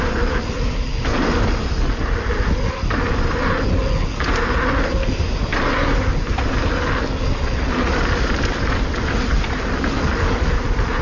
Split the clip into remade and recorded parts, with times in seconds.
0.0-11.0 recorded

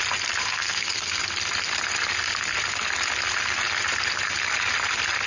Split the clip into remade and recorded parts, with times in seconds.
0.0-0.4 recorded; 0.4-1.2 remade; 1.2-5.3 recorded

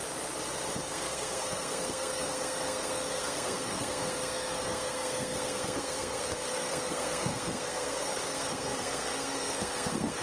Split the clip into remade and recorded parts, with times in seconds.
0.0-0.8 recorded; 0.8-10.2 remade

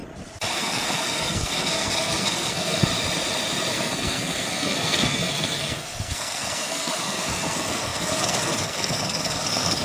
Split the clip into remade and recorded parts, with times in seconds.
0.0-0.5 recorded; 0.5-2.9 remade; 2.9-3.7 recorded; 3.7-9.8 remade

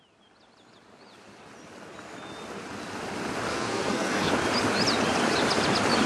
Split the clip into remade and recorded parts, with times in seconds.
0.0-3.5 recorded; 3.5-4.3 remade; 4.3-6.1 recorded

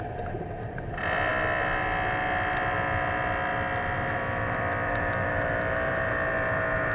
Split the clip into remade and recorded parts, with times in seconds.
0.0-6.9 recorded

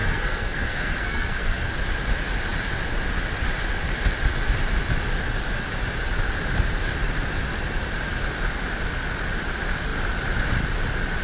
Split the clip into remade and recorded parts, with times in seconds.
0.0-1.7 remade; 1.7-11.2 recorded